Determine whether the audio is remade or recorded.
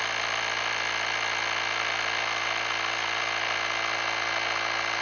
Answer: recorded